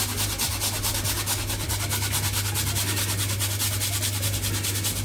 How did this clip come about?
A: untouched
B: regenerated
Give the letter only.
A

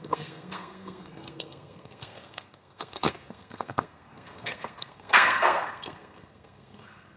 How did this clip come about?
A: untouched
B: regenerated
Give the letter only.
B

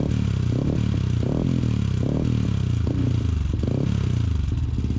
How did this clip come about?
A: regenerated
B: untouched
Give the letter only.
B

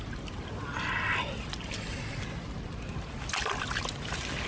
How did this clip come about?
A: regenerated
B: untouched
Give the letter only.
B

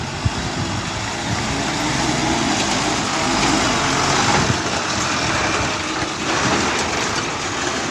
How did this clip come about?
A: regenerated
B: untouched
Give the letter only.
B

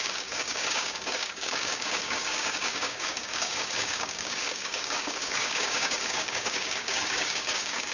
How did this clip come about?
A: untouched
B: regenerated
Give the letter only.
B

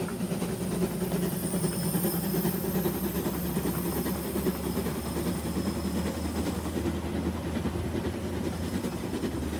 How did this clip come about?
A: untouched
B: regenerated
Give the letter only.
A